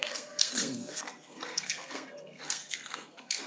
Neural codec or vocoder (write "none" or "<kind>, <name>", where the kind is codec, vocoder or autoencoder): codec, SNAC